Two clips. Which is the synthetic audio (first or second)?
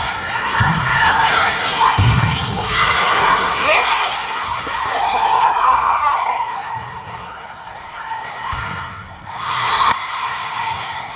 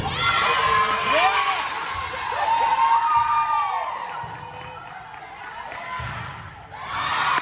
first